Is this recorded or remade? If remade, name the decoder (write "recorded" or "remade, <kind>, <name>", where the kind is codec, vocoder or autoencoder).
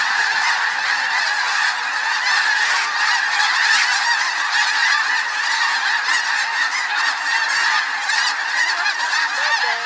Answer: recorded